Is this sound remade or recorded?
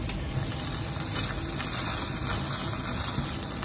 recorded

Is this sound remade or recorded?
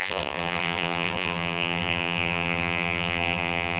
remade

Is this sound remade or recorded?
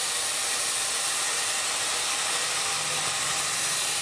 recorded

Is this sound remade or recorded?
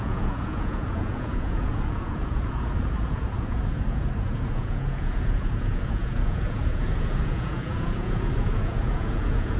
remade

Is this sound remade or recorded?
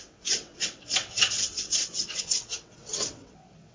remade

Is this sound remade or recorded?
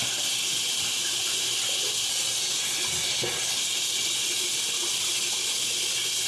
recorded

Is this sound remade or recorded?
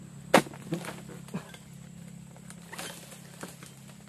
recorded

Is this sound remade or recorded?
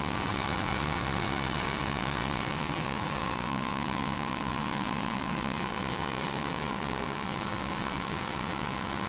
remade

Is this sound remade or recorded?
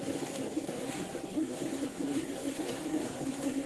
remade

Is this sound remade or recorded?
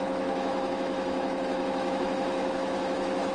remade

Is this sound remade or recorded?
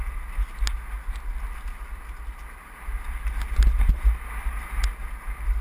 recorded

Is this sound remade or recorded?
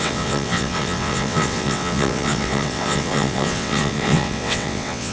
remade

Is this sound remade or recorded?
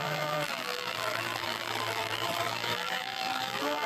remade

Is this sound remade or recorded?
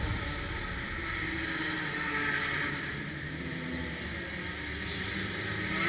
recorded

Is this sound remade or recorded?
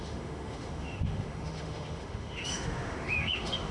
remade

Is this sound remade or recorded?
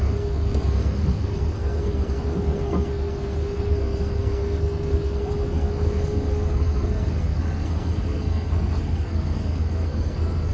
remade